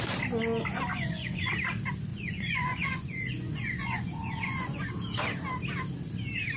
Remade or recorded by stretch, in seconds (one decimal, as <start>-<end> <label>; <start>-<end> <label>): 0.0-0.9 recorded; 0.9-1.5 remade; 1.5-2.1 recorded; 2.1-4.9 remade; 4.9-6.6 recorded